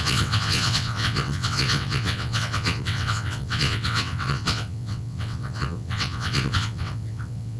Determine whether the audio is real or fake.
fake